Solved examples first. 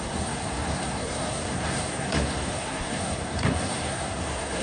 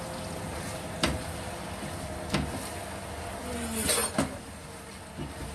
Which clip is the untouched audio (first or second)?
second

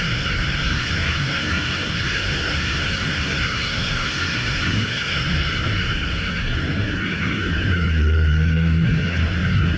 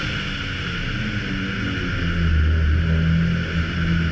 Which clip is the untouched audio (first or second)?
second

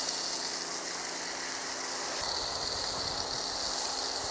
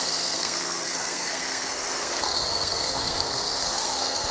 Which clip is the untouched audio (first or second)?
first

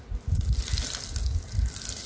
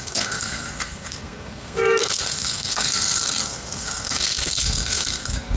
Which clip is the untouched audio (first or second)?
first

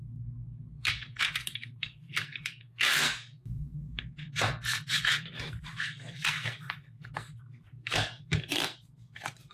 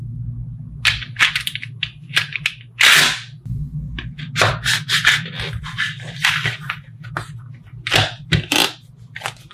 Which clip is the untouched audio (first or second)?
second